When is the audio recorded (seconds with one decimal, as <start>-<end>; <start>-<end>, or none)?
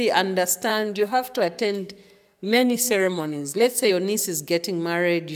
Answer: 0.0-0.7; 3.9-5.4